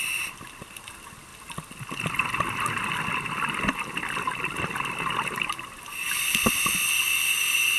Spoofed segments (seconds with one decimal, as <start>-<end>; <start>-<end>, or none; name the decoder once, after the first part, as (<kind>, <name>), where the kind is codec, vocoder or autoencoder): none